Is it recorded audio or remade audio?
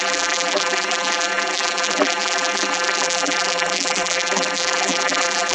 remade